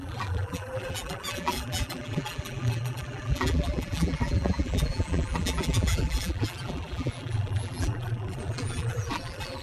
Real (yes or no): no